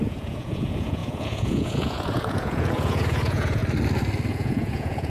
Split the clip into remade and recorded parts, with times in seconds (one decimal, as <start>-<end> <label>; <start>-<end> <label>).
0.0-3.6 remade; 3.6-4.3 recorded; 4.3-5.1 remade